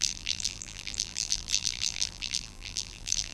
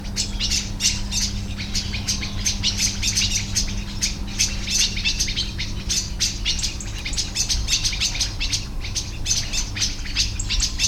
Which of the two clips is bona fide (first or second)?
second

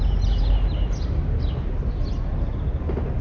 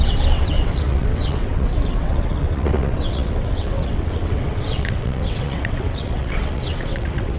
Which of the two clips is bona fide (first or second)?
first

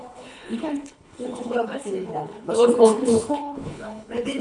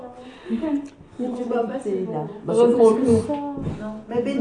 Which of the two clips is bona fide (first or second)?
second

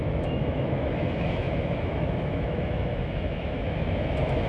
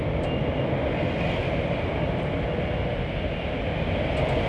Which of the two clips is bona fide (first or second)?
second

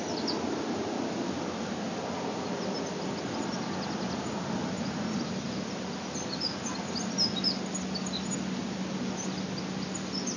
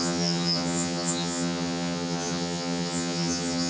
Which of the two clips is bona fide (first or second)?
first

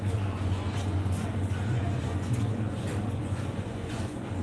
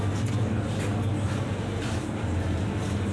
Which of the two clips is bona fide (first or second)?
second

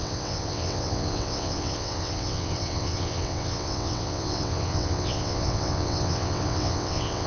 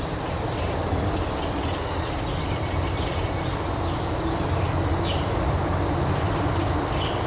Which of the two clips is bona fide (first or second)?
second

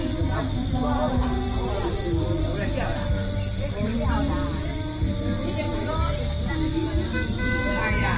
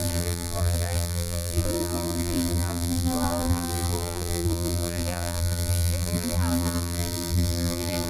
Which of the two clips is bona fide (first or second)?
first